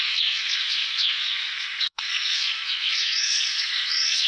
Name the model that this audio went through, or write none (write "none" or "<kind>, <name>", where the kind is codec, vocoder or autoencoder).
codec, SNAC